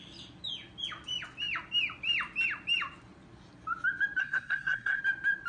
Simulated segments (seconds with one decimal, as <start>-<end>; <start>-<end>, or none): 4.2-5.0